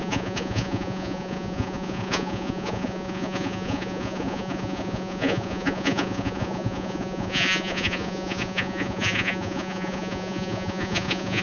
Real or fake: fake